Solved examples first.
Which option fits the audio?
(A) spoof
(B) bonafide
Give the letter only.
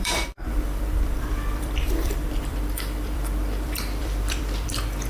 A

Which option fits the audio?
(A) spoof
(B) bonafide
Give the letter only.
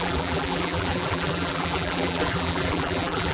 A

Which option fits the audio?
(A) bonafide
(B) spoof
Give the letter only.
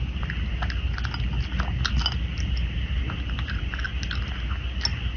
A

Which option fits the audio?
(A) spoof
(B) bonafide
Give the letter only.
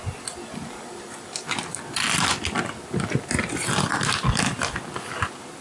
B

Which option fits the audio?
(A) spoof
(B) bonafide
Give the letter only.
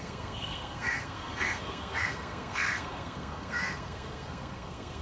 A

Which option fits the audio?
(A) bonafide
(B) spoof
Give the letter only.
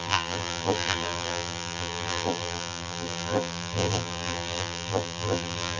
B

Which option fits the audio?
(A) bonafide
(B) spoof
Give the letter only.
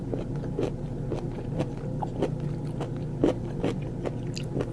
A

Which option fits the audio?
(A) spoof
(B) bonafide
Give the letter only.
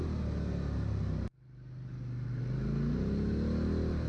B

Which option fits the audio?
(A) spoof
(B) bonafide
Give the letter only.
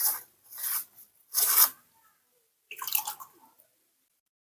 A